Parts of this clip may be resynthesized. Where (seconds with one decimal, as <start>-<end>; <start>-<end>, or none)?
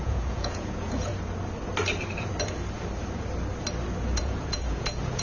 0.0-1.1; 4.2-5.2